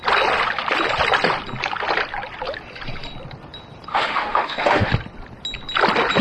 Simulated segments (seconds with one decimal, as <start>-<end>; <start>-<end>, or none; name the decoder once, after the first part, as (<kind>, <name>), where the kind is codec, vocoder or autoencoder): 3.9-4.9 (autoencoder, DAC-VAE)